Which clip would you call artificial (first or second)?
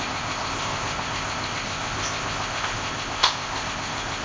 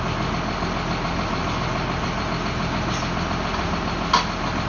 first